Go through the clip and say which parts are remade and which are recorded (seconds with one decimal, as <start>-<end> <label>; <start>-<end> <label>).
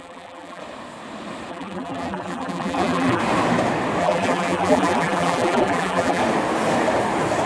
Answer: 0.0-0.6 remade; 0.6-1.5 recorded; 1.5-3.2 remade; 3.2-4.0 recorded; 4.0-6.2 remade; 6.2-7.5 recorded